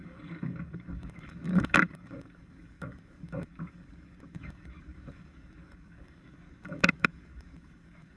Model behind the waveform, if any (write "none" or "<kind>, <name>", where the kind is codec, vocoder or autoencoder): codec, DAC